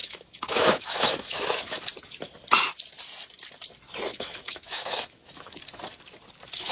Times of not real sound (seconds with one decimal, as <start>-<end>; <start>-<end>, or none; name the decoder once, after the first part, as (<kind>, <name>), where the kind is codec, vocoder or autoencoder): 0.0-1.8 (autoencoder, DAC-VAE); 4.1-5.6